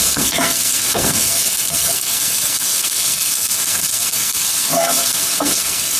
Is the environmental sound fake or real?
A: fake